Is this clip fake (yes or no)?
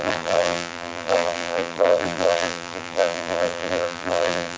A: yes